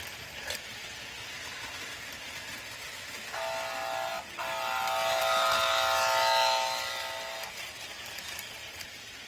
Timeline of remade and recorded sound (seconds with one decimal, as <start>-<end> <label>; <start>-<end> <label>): 0.0-9.3 recorded